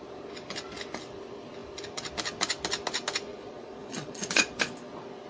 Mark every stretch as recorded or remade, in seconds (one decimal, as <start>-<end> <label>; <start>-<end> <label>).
0.0-3.3 recorded; 3.3-4.5 remade; 4.5-5.3 recorded